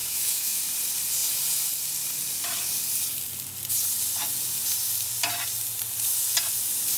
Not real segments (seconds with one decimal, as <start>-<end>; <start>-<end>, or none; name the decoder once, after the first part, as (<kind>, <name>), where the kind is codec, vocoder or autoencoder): 0.0-0.6 (autoencoder, DAC-VAE)